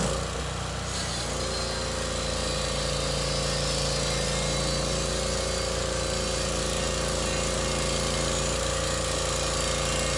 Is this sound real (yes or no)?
yes